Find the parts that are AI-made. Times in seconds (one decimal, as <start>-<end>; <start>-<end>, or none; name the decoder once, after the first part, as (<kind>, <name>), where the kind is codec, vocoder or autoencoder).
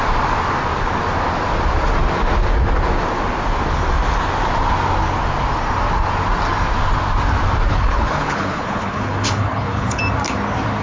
7.7-10.0 (codec, HILCodec)